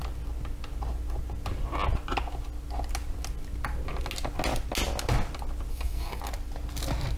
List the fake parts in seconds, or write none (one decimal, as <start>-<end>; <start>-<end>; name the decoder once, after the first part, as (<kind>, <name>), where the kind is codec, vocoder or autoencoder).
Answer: 5.7-6.2 (codec, SNAC)